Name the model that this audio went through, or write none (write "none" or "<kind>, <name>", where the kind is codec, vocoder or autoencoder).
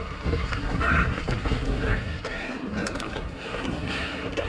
codec, SNAC